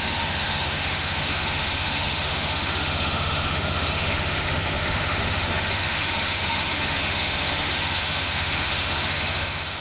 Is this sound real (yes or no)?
no